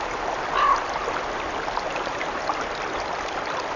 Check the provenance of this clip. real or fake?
real